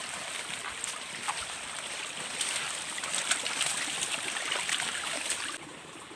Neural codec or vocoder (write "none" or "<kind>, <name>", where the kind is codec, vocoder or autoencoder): none